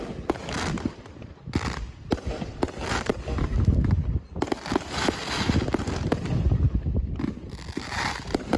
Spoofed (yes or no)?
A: no